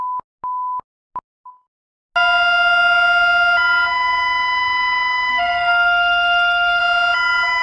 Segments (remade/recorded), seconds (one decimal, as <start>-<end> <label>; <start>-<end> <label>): 0.0-5.3 recorded; 5.3-6.8 remade; 6.8-7.6 recorded